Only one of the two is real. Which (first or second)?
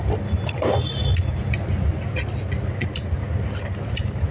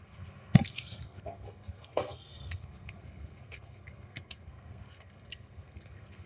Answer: first